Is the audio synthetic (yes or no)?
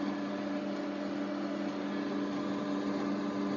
no